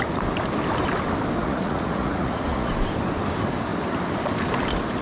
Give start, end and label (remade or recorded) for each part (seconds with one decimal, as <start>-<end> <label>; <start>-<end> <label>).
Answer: 0.0-1.4 recorded; 1.4-2.7 remade; 2.7-5.0 recorded